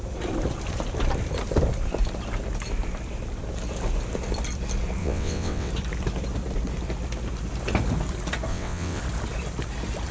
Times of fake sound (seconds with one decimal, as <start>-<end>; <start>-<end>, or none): 5.0-5.7; 8.5-9.0